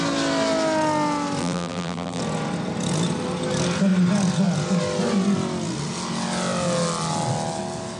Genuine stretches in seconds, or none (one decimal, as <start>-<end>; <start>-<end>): 0.0-1.4; 2.2-8.0